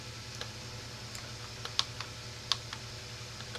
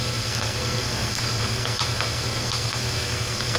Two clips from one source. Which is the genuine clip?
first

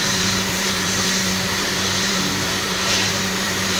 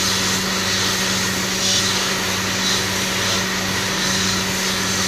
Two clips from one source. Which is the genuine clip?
second